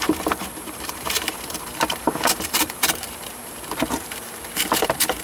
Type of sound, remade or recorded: remade